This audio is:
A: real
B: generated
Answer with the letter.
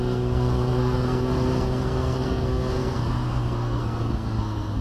B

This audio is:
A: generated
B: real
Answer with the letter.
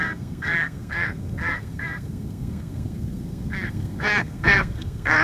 A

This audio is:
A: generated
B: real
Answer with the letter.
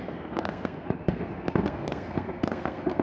A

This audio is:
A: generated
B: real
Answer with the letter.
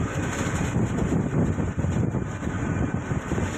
B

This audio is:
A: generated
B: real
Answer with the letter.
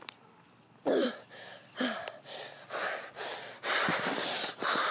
B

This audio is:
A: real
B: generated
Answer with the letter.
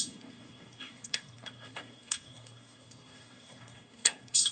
B